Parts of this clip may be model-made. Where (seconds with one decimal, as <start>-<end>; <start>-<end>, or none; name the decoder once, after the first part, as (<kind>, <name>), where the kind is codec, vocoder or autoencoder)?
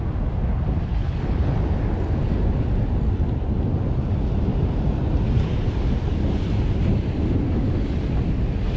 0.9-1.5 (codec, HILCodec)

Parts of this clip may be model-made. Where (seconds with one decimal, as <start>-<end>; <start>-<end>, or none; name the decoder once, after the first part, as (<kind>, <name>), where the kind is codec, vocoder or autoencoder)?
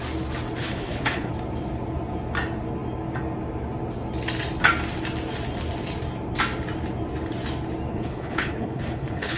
0.6-1.3 (codec, HILCodec); 7.9-9.4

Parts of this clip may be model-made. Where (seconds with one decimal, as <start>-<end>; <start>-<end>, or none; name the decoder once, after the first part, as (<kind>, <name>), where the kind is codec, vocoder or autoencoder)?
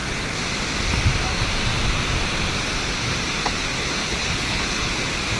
4.0-4.9 (codec, HILCodec)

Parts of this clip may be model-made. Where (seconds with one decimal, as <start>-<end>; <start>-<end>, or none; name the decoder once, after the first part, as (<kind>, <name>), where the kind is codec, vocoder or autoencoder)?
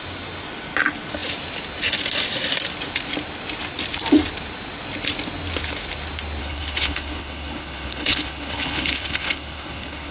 6.4-10.1 (codec, HILCodec)